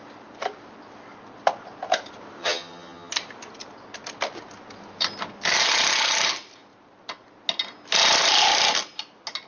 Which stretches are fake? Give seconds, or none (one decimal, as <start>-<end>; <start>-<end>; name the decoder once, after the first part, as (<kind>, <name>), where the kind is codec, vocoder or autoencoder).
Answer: 2.4-3.1 (vocoder, HiFi-GAN)